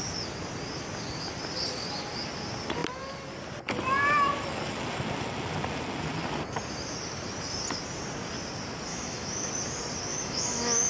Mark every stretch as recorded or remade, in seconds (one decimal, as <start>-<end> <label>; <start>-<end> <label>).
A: 0.0-8.9 recorded; 8.9-9.5 remade; 9.5-10.1 recorded; 10.1-10.9 remade